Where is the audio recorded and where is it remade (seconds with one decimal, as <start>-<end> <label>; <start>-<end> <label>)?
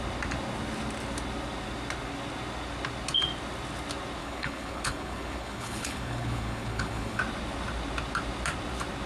0.0-4.2 recorded; 4.2-7.2 remade; 7.2-9.1 recorded